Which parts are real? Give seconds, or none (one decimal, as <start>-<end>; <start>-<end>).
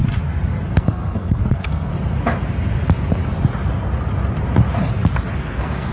0.0-0.7; 1.9-5.4